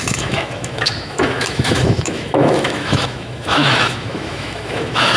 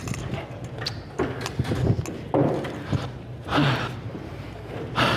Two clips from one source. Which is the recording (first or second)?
second